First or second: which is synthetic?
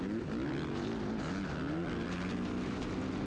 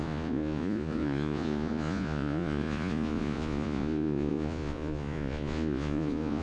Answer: second